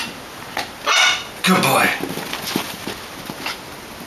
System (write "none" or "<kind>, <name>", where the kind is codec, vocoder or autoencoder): none